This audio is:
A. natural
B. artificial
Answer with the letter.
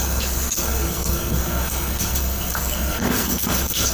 B